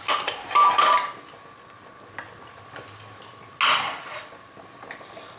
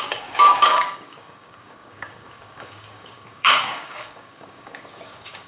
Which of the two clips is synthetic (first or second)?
second